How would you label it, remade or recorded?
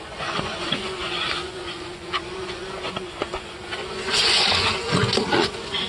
remade